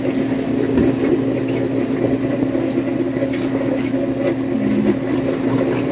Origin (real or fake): real